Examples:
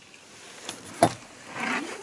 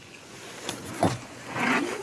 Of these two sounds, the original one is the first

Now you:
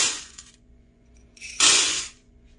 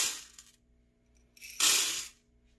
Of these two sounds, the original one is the second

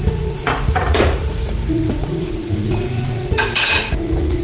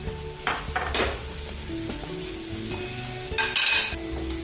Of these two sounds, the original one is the second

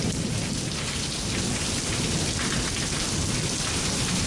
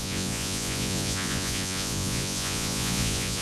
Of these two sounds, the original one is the first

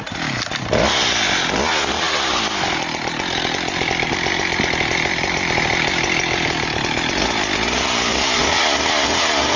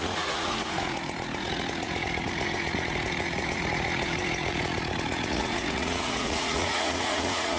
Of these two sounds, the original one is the first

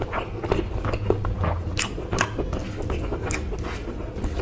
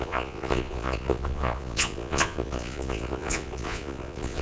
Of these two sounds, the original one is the first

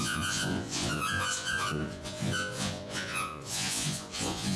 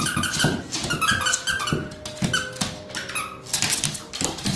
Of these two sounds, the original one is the second